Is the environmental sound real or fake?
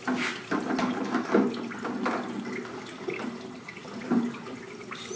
real